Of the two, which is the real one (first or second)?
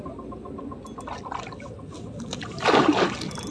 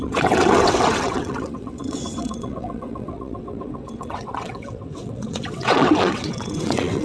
first